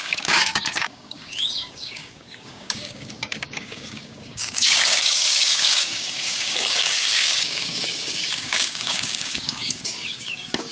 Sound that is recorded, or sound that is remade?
remade